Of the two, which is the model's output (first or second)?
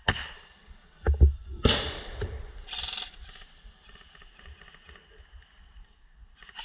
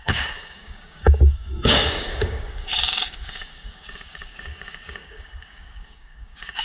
second